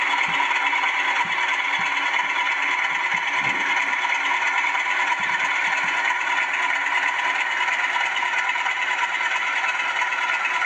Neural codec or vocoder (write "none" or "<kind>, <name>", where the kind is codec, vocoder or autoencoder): none